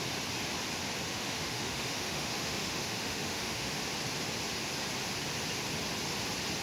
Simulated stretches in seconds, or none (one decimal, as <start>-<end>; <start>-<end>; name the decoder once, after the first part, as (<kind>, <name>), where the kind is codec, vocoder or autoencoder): 1.1-3.8 (autoencoder, DAC-VAE)